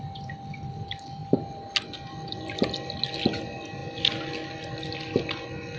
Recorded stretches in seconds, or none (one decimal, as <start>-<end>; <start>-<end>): 0.0-5.8